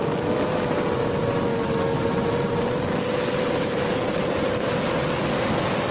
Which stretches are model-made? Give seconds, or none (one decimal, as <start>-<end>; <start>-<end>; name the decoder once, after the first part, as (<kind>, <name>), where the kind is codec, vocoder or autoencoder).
none